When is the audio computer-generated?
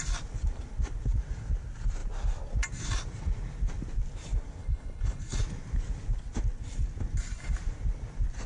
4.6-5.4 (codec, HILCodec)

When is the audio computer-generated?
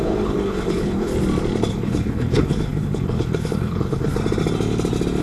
0.0-1.1 (codec, HILCodec); 1.7-4.1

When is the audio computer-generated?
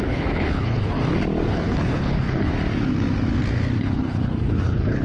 0.0-1.0 (codec, HILCodec); 1.5-2.5; 3.8-5.0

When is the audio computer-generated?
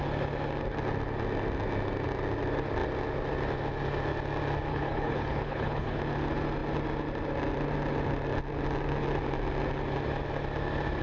4.7-6.0 (codec, HILCodec)